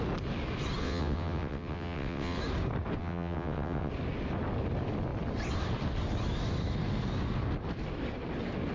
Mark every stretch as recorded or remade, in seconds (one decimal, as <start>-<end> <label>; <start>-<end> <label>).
0.0-0.8 recorded; 0.8-2.4 remade; 2.4-3.0 recorded; 3.0-3.9 remade; 3.9-8.7 recorded